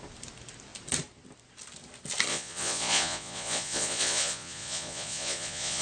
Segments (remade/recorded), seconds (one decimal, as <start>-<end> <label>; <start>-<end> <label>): 0.0-2.3 recorded; 2.3-5.8 remade

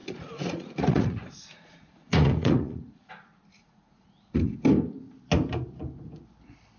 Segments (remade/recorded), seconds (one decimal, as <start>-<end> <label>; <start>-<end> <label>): 0.0-3.1 remade; 3.1-3.5 recorded; 3.5-4.5 remade; 4.5-6.8 recorded

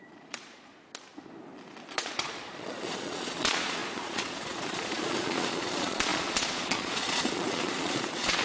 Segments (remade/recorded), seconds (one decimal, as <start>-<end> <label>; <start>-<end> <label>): 0.0-0.7 remade; 0.7-1.9 recorded; 1.9-8.4 remade

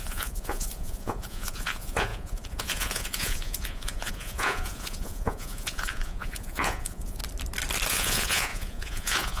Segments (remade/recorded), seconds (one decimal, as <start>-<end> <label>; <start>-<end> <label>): 0.0-7.2 remade; 7.2-7.9 recorded; 7.9-9.4 remade

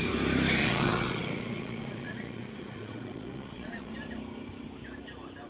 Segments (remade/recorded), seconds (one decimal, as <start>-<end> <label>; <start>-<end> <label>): 0.0-0.6 recorded; 0.6-3.9 remade; 3.9-5.5 recorded

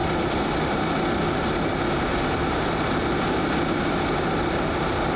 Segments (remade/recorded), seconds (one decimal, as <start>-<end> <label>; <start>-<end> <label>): 0.0-5.2 recorded